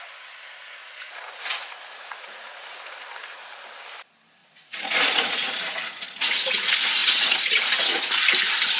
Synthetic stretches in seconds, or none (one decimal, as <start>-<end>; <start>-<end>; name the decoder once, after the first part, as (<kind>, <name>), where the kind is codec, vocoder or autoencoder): 0.8-3.5 (vocoder, Vocos); 4.4-6.6; 7.0-8.2